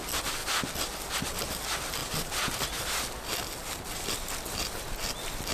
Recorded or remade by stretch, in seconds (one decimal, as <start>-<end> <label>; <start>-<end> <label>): 0.0-5.5 recorded